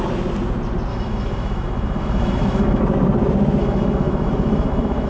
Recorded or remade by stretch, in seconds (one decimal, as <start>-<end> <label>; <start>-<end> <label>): 0.0-0.9 recorded; 0.9-2.8 remade; 2.8-3.6 recorded; 3.6-5.1 remade